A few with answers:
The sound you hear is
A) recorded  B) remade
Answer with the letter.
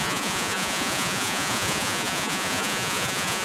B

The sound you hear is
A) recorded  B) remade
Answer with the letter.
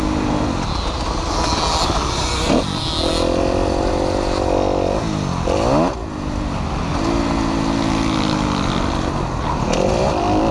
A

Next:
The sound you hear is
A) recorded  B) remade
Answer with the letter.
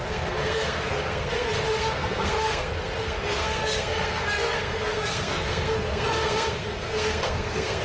B